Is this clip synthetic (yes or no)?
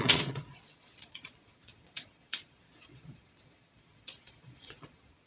yes